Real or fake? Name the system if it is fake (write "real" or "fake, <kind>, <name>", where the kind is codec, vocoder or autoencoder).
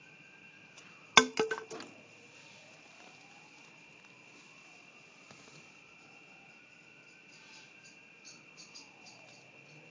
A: real